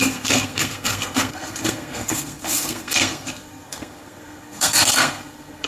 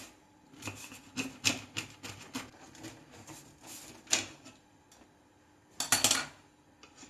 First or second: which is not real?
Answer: first